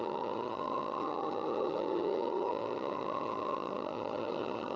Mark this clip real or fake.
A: fake